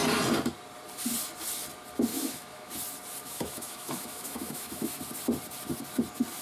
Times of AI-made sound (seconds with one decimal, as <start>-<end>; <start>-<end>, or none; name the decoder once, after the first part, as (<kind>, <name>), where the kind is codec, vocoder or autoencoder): 2.1-2.7 (autoencoder, DAC-VAE); 3.2-5.0